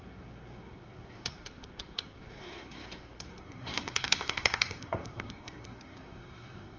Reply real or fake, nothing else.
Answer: fake